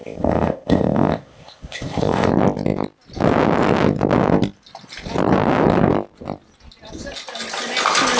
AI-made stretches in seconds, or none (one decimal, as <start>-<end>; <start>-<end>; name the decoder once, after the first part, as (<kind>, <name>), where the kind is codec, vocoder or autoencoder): 0.0-2.3 (codec, ZipCodec)